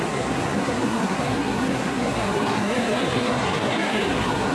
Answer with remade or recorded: remade